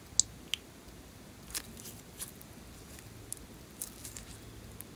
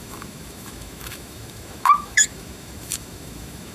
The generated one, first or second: second